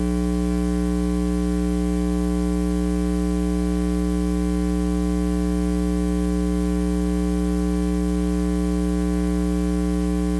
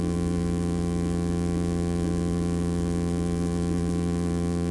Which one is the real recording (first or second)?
first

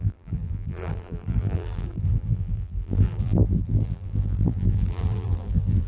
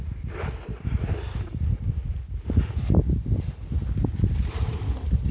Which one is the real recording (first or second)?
second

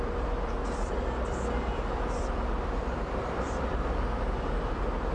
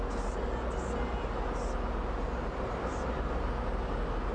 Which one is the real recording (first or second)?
second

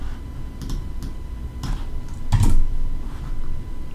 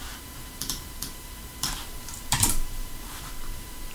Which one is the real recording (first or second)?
first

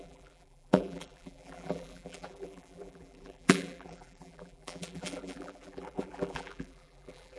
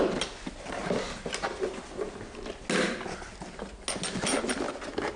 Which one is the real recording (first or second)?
second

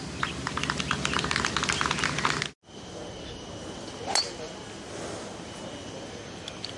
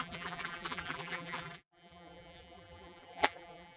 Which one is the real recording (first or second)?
first